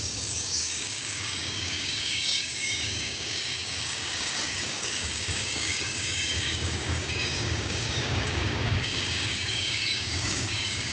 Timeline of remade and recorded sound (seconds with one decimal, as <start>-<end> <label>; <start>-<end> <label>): 0.0-10.9 remade